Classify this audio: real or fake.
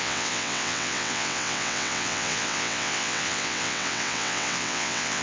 fake